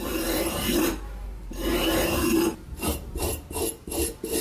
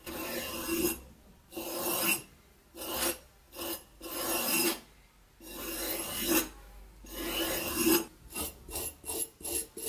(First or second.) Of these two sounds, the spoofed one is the first